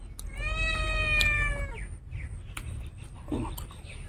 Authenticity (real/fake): real